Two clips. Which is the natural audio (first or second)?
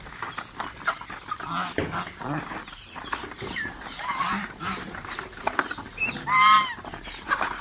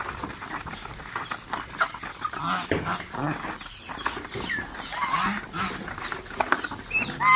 second